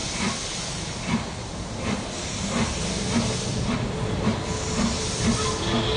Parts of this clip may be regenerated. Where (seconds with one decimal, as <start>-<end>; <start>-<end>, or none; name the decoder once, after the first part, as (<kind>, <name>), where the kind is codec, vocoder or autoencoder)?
none